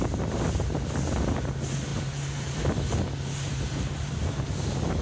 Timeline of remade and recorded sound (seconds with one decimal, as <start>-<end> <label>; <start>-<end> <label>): 0.0-1.9 recorded; 1.9-2.6 remade; 2.6-3.5 recorded; 3.5-4.1 remade; 4.1-5.0 recorded